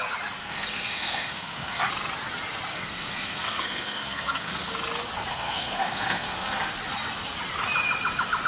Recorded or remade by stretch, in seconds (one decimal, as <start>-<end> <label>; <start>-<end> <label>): 0.0-0.4 recorded; 0.4-1.9 remade; 1.9-2.7 recorded; 2.7-4.7 remade; 4.7-5.3 recorded; 5.3-6.7 remade; 6.7-8.5 recorded